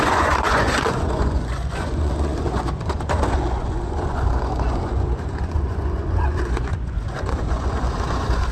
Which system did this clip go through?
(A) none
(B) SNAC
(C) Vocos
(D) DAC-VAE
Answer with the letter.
C